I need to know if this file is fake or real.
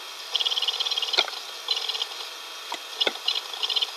real